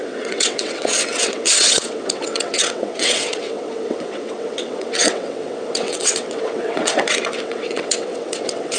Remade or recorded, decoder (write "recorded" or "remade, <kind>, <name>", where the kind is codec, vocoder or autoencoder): remade, vocoder, WaveNeXt